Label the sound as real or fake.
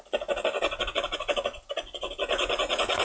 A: real